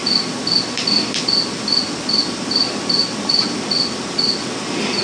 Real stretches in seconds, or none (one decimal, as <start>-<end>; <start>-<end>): 0.0-5.0